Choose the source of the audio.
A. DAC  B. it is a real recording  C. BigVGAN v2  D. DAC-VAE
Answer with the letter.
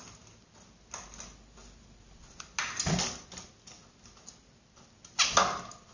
B